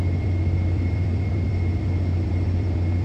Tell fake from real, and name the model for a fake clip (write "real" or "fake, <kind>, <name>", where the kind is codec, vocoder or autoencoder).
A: fake, vocoder, BigVGAN v2